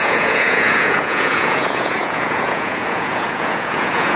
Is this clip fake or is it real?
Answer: fake